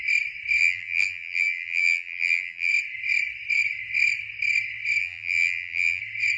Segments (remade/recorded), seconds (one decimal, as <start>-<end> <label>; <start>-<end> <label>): 0.0-0.6 recorded; 0.6-2.7 remade; 2.7-5.0 recorded; 5.0-6.0 remade; 6.0-6.4 recorded